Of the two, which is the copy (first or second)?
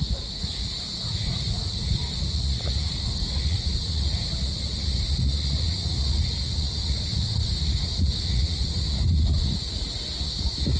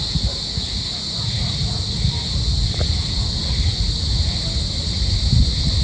first